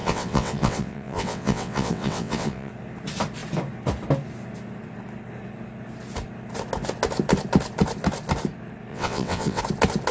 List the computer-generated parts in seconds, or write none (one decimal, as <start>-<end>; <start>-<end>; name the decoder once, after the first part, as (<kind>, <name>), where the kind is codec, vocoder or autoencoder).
0.0-2.7 (vocoder, WaveNeXt); 8.9-9.6